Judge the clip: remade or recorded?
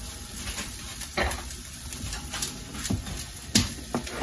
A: remade